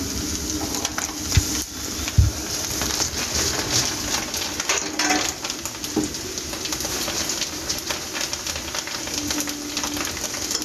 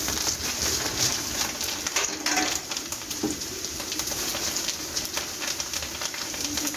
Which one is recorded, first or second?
first